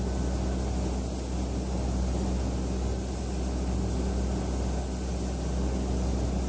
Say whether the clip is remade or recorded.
recorded